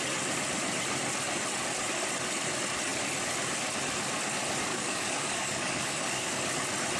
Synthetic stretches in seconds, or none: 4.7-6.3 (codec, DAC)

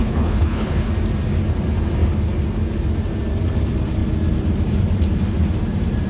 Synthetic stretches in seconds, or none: 0.0-0.9 (codec, HILCodec)

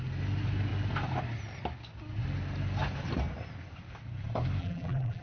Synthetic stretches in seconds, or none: 4.6-5.2 (vocoder, BigVGAN v2)